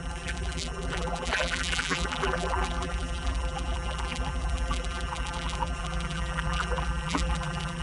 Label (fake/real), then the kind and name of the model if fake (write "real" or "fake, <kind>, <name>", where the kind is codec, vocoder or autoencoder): fake, vocoder, BigVGAN v2